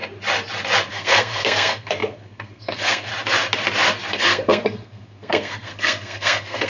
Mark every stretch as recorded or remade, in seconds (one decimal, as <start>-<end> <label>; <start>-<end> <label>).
0.0-0.9 recorded; 0.9-3.1 remade; 3.1-4.1 recorded; 4.1-6.7 remade